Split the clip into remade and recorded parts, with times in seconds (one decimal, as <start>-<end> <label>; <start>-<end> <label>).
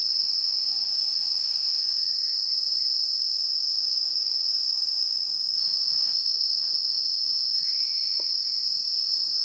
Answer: 0.0-0.9 recorded; 0.9-2.1 remade; 2.1-3.2 recorded; 3.2-8.4 remade; 8.4-9.4 recorded